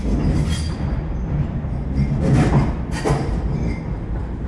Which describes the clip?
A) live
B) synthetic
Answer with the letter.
A